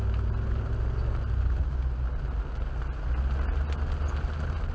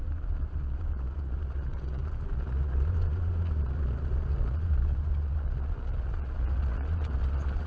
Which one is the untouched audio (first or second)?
first